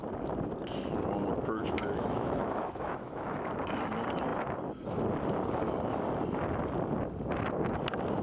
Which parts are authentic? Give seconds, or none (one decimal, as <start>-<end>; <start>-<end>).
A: 0.0-1.6; 3.4-8.2